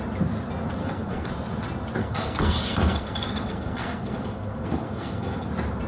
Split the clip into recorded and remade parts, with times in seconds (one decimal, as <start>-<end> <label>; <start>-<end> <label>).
0.0-0.8 recorded; 0.8-1.3 remade; 1.3-2.0 recorded; 2.0-5.5 remade; 5.5-5.9 recorded